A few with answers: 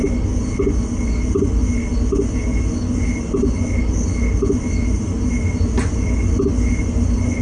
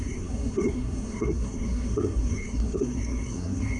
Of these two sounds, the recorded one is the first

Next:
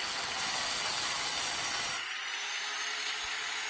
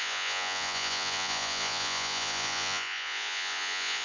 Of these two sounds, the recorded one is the first